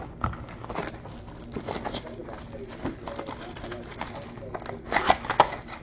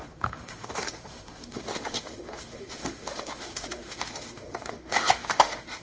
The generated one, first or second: second